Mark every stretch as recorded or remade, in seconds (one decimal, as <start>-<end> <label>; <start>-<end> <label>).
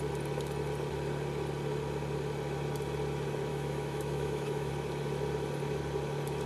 0.0-3.5 recorded; 3.5-4.7 remade; 4.7-6.5 recorded